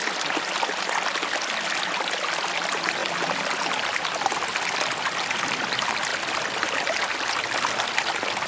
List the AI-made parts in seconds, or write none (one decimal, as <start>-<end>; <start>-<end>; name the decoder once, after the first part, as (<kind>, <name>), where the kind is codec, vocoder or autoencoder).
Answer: none